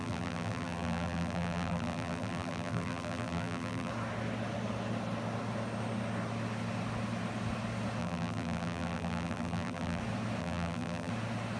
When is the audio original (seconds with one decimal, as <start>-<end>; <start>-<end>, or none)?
3.9-8.0; 10.0-10.4; 11.1-11.6